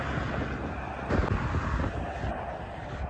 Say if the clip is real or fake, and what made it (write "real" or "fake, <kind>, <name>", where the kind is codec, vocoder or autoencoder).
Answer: real